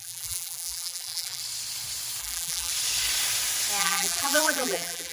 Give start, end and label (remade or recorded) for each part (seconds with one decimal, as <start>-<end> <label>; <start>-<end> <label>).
0.0-1.4 remade; 1.4-2.2 recorded; 2.2-2.7 remade; 2.7-3.8 recorded; 3.8-5.1 remade